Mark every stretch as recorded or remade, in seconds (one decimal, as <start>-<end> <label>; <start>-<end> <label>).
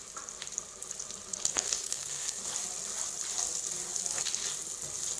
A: 0.0-1.5 recorded; 1.5-2.4 remade; 2.4-5.2 recorded